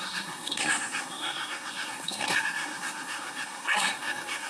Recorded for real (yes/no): no